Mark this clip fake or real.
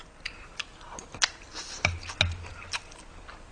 real